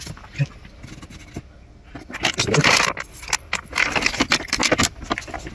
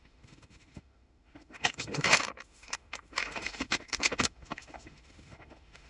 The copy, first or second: second